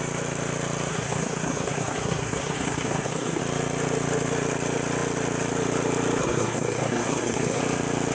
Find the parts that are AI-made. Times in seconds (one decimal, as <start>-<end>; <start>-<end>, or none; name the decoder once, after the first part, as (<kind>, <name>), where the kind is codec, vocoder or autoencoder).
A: 0.9-3.4 (codec, SNAC); 6.2-7.6